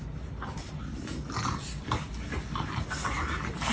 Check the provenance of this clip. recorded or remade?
recorded